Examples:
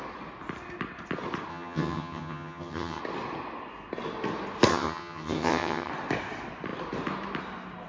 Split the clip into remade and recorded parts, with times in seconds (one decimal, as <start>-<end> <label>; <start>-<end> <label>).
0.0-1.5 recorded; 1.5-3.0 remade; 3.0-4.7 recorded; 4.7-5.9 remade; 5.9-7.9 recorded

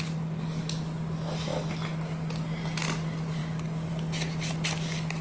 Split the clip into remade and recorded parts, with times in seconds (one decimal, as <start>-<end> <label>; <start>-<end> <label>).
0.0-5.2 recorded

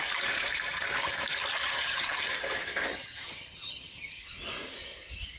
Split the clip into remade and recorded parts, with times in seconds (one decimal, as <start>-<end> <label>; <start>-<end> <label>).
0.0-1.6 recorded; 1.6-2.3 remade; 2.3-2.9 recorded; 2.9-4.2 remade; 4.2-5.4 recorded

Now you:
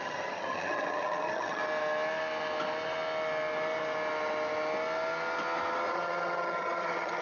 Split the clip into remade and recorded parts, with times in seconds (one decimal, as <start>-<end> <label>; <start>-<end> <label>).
0.0-1.6 remade; 1.6-5.9 recorded; 5.9-7.2 remade

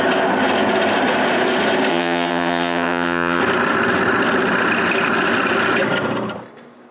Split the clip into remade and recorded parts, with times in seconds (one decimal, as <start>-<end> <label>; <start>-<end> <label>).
0.0-1.9 recorded; 1.9-3.4 remade; 3.4-6.9 recorded